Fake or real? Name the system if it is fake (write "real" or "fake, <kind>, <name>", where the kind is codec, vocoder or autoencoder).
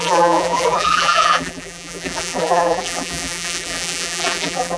fake, vocoder, BigVGAN v2